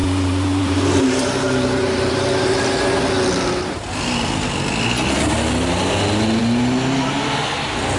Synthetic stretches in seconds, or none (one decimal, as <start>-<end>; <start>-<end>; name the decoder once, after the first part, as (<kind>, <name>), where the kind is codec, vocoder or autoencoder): 0.0-2.5 (vocoder, BigVGAN v2)